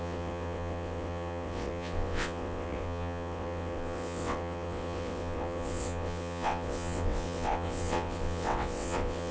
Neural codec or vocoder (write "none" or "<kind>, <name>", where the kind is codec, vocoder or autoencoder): vocoder, WaveNeXt